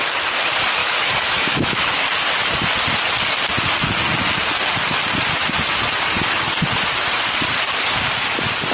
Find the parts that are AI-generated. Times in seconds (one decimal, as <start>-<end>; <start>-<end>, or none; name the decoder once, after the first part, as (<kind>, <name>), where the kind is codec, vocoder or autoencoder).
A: 0.8-1.9 (autoencoder, DAC-VAE)